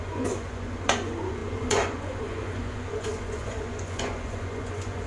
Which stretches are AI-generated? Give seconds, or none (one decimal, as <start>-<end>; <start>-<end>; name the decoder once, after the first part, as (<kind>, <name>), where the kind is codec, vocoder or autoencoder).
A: 0.0-5.1 (vocoder, Vocos)